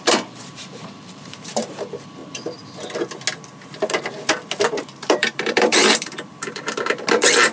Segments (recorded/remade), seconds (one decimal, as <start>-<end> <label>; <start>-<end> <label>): 0.0-2.2 remade; 2.2-4.8 recorded; 4.8-7.5 remade